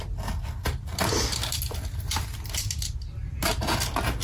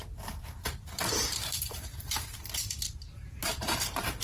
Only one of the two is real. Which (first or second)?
first